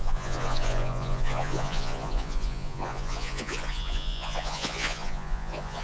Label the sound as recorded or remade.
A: remade